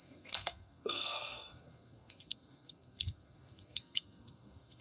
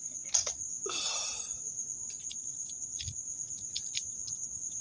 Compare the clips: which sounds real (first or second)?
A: second